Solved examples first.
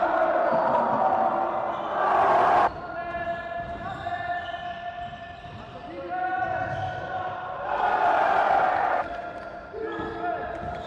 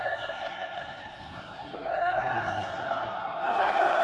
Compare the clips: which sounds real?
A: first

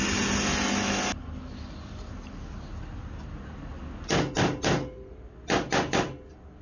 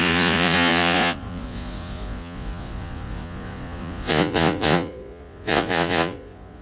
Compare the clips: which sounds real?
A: first